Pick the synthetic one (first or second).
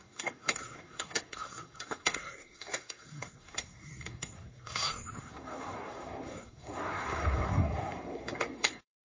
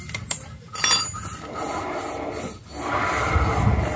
first